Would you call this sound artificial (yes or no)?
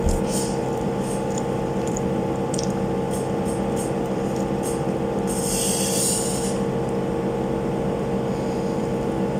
yes